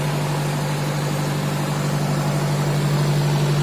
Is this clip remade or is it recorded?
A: recorded